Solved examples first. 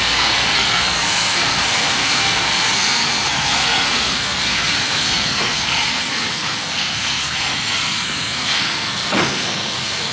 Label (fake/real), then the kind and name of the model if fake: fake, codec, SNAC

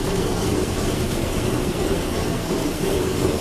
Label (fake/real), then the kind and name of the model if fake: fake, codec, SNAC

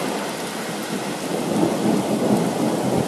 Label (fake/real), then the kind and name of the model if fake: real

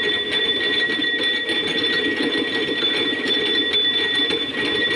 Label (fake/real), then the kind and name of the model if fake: real